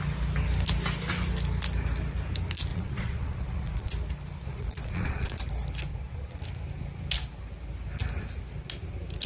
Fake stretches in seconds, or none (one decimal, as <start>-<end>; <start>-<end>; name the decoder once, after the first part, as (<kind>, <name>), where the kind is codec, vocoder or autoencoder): 2.7-3.9 (vocoder, Vocos); 4.4-5.4; 5.9-6.4